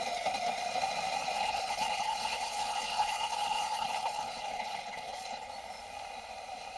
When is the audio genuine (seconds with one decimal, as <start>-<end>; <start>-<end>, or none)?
0.0-1.4; 5.5-6.8